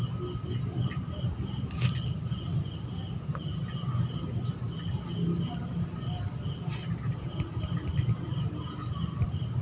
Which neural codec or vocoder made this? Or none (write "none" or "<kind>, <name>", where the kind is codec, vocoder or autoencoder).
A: none